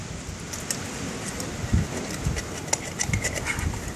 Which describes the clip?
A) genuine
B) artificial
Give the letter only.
A